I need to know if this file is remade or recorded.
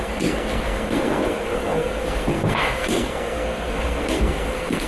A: remade